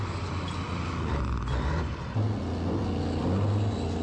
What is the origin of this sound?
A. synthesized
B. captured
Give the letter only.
B